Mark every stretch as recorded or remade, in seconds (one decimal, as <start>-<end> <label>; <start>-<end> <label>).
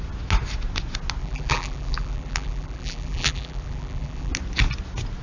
0.0-1.2 recorded; 1.2-4.3 remade; 4.3-5.2 recorded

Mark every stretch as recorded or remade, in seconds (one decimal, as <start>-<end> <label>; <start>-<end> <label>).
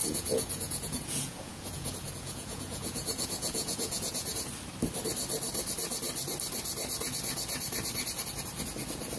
0.0-4.4 remade; 4.4-9.2 recorded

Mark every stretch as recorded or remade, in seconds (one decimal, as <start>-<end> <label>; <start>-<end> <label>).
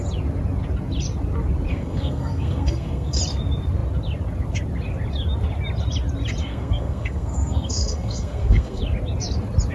0.0-1.7 recorded; 1.7-3.2 remade; 3.2-6.4 recorded; 6.4-8.8 remade; 8.8-9.7 recorded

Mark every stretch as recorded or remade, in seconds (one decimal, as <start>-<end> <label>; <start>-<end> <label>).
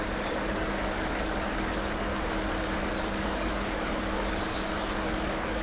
0.0-2.1 remade; 2.1-3.0 recorded; 3.0-5.6 remade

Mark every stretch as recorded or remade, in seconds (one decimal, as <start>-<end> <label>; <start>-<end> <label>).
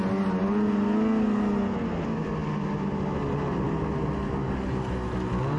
0.0-5.6 recorded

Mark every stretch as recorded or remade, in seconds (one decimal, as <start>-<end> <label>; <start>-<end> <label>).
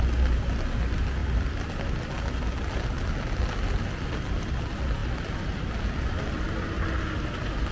0.0-7.7 recorded